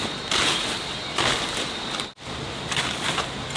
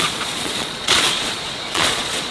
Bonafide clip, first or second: first